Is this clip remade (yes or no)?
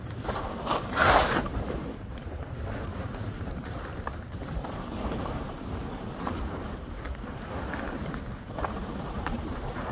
yes